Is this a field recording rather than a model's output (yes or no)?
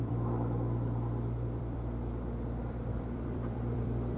no